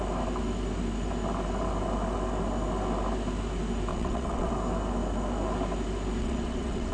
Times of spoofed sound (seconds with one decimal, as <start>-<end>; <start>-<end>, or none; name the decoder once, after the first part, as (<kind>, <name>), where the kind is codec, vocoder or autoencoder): 3.9-4.5 (vocoder, WaveNeXt); 6.2-6.9